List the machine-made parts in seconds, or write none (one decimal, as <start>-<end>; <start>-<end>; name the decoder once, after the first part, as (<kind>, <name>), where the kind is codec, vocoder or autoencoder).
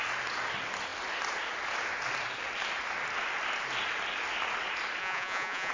5.0-5.7 (vocoder, Vocos)